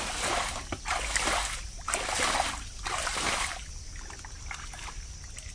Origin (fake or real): real